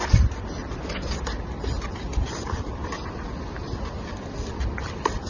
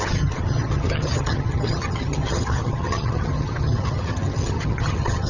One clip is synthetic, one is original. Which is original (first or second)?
first